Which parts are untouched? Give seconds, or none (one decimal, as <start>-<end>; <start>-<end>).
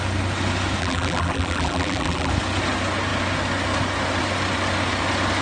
0.0-0.8; 2.3-5.4